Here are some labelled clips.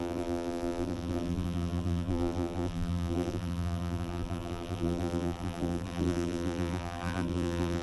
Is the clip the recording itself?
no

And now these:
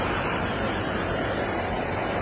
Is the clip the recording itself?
no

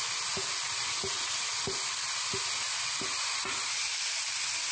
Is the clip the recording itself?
yes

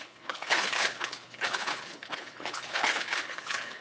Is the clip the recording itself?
no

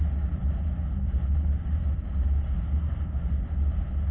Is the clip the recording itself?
yes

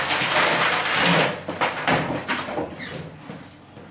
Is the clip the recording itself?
yes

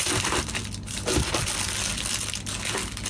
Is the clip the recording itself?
yes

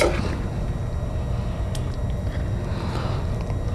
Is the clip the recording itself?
yes